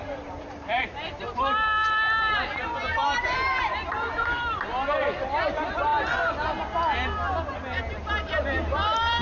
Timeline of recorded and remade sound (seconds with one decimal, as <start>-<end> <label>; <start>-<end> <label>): 0.0-5.9 remade; 5.9-7.9 recorded; 7.9-9.2 remade